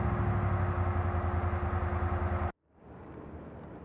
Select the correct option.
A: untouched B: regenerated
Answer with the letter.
A